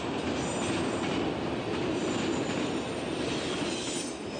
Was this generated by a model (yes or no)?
no